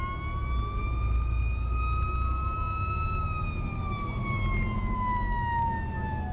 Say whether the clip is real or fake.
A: real